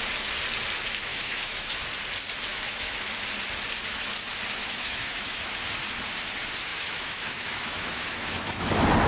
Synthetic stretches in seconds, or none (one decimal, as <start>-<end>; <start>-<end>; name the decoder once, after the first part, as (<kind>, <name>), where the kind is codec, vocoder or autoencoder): 1.1-1.7 (autoencoder, DAC-VAE); 2.5-3.1; 4.6-5.4; 6.7-8.7